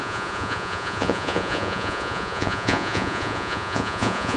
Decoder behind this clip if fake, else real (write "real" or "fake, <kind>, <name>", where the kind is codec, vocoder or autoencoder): fake, vocoder, Vocos